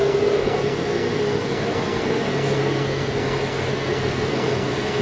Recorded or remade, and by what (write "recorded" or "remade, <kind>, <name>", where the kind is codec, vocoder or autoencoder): remade, codec, SNAC